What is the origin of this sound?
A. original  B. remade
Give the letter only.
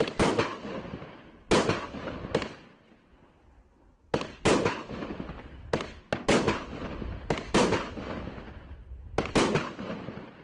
A